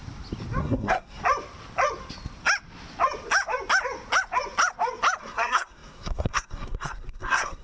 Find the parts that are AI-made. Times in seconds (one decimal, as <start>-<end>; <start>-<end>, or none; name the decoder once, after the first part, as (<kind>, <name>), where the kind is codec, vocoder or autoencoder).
0.6-1.2 (codec, SNAC); 5.2-7.6